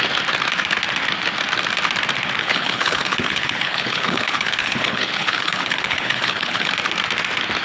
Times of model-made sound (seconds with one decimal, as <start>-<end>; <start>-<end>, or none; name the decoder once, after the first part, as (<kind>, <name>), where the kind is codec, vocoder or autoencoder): 2.4-6.7 (codec, HILCodec)